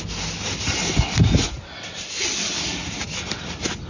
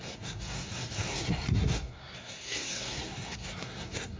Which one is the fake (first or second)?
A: second